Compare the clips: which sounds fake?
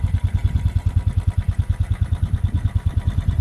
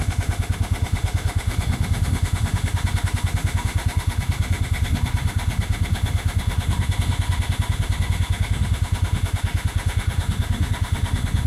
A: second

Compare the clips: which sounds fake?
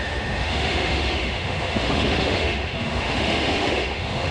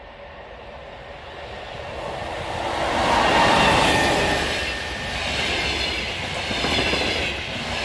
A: first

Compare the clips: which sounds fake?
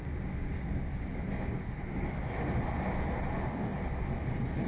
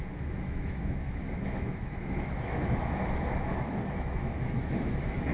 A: second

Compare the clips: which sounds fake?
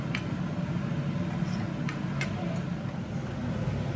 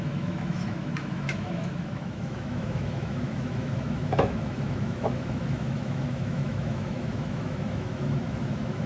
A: second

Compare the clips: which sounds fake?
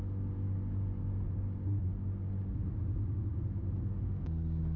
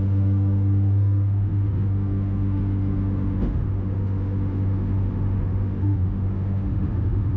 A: second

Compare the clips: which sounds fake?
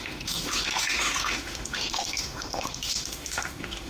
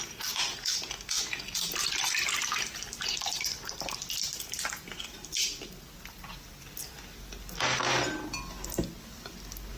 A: first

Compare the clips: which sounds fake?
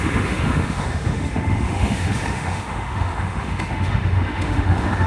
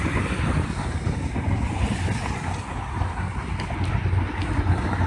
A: first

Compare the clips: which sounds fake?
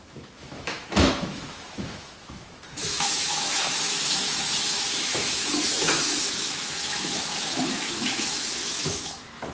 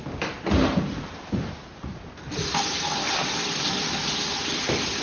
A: first